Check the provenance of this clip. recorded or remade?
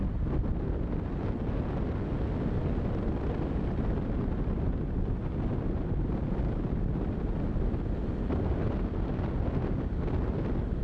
recorded